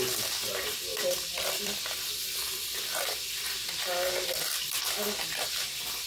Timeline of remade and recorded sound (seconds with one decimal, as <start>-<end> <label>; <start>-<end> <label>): 0.0-0.9 recorded; 0.9-1.8 remade; 1.8-6.1 recorded